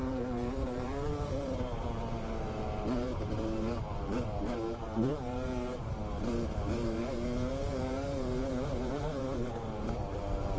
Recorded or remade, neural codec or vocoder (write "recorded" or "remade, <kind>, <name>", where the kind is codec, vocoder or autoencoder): remade, vocoder, BigVGAN v2